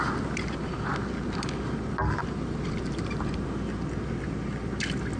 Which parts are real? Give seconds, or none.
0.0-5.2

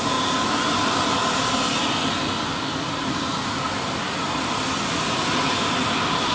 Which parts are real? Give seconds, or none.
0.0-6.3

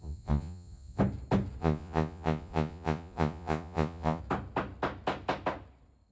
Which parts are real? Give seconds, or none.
1.0-1.6; 4.2-6.1

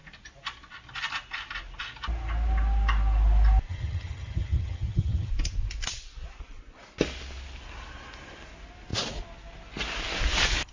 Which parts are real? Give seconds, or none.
0.0-3.7; 5.3-10.7